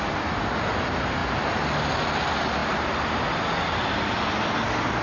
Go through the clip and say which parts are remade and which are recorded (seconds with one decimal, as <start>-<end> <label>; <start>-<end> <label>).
0.0-5.0 recorded